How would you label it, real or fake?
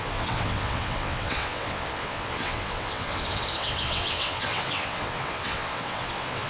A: fake